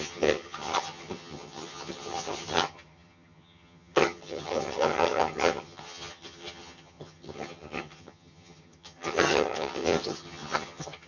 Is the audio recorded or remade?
remade